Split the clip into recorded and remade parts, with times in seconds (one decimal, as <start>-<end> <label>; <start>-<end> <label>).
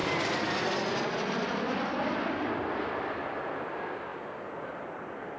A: 0.0-5.4 recorded